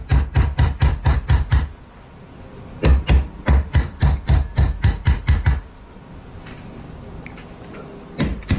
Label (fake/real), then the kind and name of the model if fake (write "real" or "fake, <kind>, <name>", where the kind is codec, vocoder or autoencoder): real